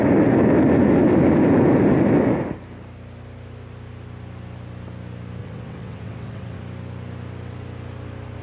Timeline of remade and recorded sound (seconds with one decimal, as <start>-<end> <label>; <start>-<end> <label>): 0.0-5.4 recorded; 5.4-6.6 remade; 6.6-8.4 recorded